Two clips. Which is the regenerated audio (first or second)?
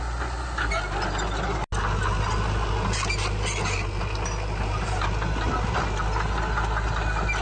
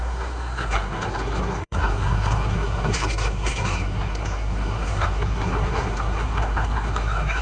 second